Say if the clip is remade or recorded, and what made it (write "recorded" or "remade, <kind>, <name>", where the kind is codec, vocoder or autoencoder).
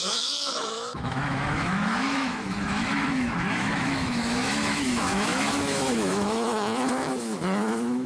remade, autoencoder, DAC-VAE